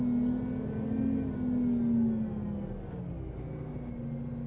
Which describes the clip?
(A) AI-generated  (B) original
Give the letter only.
B